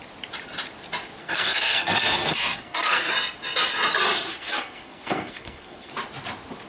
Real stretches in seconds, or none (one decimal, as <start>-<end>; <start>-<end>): 0.0-1.2; 3.1-4.3; 5.9-6.7